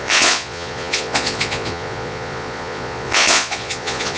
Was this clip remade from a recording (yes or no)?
yes